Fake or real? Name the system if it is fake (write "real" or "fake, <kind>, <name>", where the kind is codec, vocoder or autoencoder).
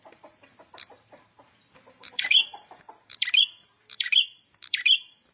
fake, vocoder, BigVGAN v2